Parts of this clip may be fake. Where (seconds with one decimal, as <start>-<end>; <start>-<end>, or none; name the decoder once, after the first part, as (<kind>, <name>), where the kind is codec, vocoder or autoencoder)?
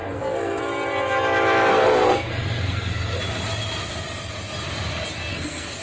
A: 0.0-0.6 (codec, SNAC); 1.7-3.2; 5.3-5.8